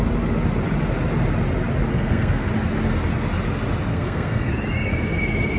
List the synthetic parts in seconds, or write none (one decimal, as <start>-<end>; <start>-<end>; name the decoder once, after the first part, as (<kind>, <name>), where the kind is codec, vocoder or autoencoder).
1.9-2.5 (codec, SNAC); 3.9-4.5